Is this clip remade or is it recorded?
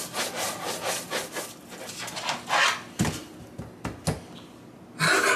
recorded